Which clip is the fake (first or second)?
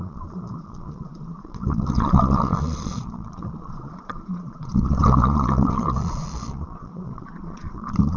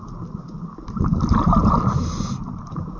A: first